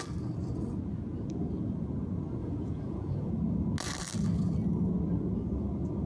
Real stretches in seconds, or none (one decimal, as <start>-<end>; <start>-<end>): 0.0-2.4; 3.3-6.1